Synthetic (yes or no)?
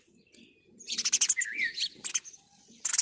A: no